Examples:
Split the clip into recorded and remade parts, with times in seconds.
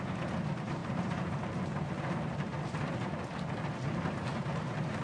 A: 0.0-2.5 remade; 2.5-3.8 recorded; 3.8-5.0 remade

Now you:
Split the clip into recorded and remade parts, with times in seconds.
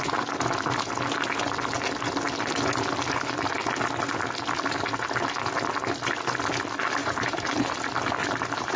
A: 0.0-7.0 recorded; 7.0-7.6 remade; 7.6-8.2 recorded; 8.2-8.8 remade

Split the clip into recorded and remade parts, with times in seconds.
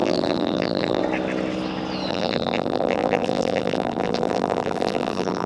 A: 0.0-1.0 remade; 1.0-2.1 recorded; 2.1-5.5 remade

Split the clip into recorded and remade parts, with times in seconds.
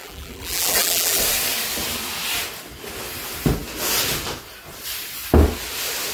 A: 0.0-1.2 remade; 1.2-6.1 recorded